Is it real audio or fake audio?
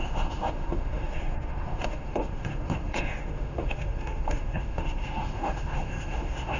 fake